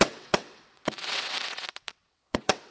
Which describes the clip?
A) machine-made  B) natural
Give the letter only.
A